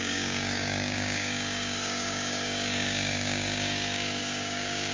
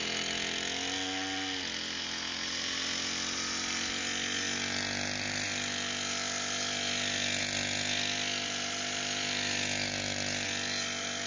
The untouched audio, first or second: second